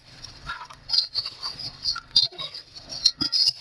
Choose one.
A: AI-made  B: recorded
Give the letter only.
A